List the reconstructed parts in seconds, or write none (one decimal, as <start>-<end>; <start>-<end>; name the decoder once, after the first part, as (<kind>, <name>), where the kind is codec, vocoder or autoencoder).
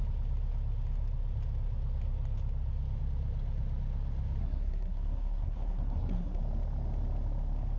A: 4.4-6.4 (codec, SNAC)